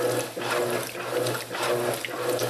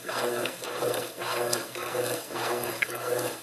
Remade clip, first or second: second